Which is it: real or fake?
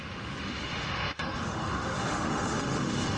fake